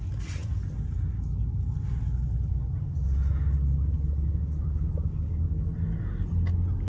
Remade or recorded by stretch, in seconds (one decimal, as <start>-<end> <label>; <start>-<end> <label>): 0.0-5.1 recorded; 5.1-5.6 remade; 5.6-6.9 recorded